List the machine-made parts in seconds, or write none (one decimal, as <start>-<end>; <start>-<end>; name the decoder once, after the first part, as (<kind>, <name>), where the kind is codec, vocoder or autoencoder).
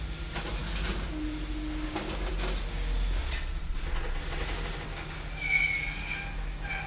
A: 3.2-4.4 (vocoder, Vocos)